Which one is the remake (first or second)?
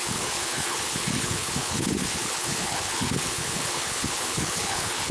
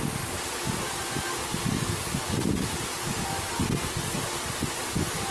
first